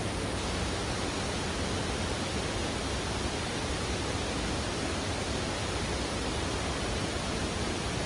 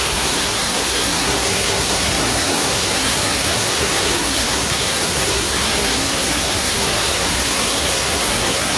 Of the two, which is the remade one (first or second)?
second